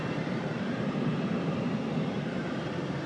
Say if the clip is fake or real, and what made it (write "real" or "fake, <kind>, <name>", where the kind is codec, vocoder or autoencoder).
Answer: fake, vocoder, BigVGAN v2